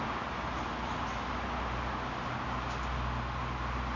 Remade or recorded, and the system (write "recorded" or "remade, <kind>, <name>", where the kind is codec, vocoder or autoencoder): recorded